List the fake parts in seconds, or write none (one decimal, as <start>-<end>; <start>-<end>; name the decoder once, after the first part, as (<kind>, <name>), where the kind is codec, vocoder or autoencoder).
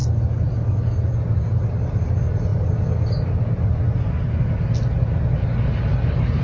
none